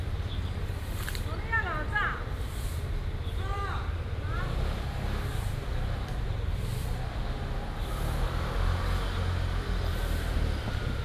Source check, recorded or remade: recorded